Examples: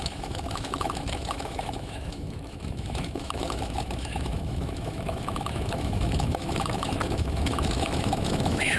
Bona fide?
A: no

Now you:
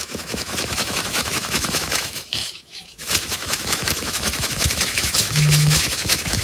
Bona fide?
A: no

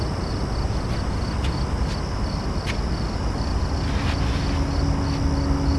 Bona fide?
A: yes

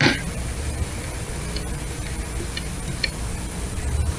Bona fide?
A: yes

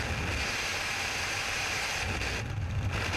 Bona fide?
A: yes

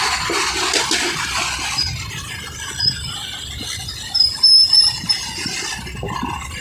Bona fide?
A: yes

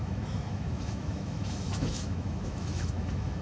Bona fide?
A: no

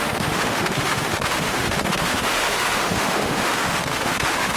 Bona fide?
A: no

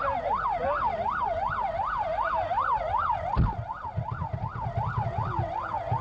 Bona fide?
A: yes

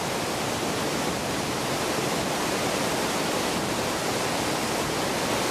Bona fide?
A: yes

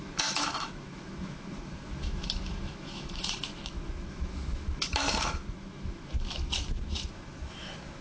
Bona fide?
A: no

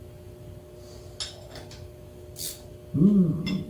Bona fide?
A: yes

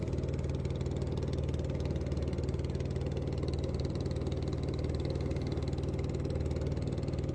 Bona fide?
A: yes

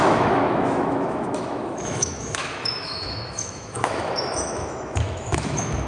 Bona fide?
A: no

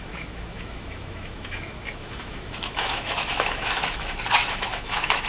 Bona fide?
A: no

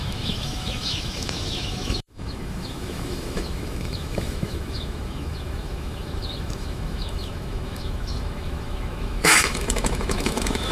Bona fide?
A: no